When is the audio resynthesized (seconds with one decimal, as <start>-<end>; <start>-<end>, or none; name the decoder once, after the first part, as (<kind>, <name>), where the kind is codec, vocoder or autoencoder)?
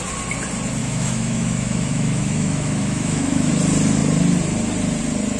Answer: 0.8-3.5 (autoencoder, DAC-VAE)